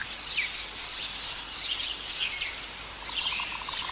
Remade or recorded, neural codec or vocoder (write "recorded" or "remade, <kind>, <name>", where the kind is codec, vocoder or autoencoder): remade, vocoder, BigVGAN v2